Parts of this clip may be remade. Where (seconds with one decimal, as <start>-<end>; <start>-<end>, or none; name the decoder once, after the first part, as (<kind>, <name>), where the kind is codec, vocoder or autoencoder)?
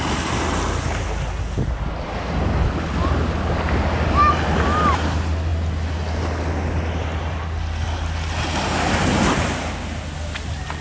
none